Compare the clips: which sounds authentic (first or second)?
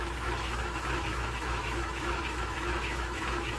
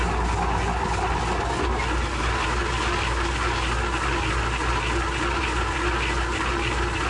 second